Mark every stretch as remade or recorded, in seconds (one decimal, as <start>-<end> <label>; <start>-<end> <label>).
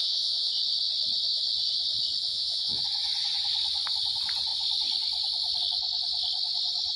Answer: 0.0-0.5 remade; 0.5-2.3 recorded; 2.3-2.8 remade; 2.8-7.0 recorded